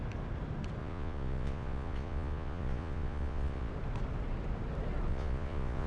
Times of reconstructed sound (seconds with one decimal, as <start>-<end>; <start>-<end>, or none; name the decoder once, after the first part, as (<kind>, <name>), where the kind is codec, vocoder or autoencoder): 0.8-3.7 (vocoder, Vocos); 5.1-5.9